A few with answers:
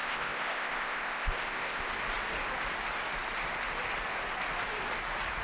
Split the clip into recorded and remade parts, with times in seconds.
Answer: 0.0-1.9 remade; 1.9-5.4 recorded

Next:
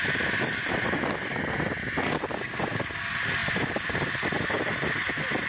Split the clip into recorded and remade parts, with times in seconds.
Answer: 0.0-5.5 recorded

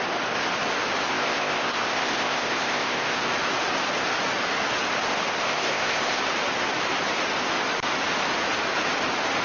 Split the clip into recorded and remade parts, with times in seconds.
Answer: 0.0-1.1 recorded; 1.1-3.3 remade; 3.3-5.4 recorded; 5.4-6.2 remade; 6.2-9.4 recorded

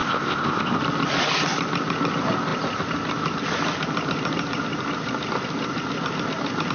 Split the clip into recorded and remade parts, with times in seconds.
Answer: 0.0-0.8 remade; 0.8-6.7 recorded

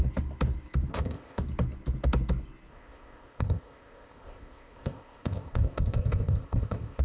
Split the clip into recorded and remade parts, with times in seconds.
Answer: 0.0-0.9 recorded; 0.9-1.4 remade; 1.4-2.7 recorded; 2.7-7.0 remade

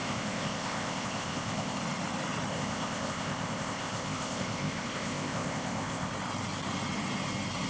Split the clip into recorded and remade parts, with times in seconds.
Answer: 0.0-1.8 remade; 1.8-2.5 recorded; 2.5-6.1 remade; 6.1-7.7 recorded

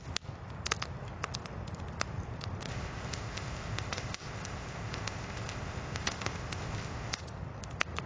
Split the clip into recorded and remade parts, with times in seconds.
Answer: 0.0-2.7 recorded; 2.7-7.2 remade; 7.2-8.1 recorded